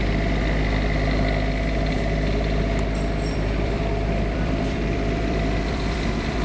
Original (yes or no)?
no